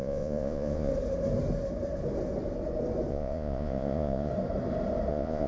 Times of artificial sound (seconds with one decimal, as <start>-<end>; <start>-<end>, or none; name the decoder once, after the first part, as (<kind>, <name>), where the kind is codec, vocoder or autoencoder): 0.0-0.9 (vocoder, Vocos); 3.1-4.3; 5.1-5.5